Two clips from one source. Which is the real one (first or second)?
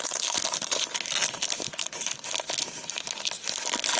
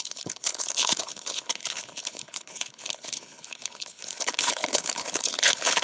first